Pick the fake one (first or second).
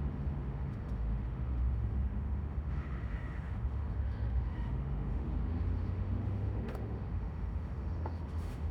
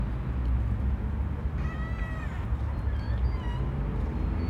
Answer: first